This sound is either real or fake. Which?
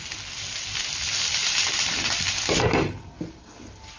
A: real